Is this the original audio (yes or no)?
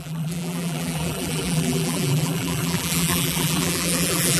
no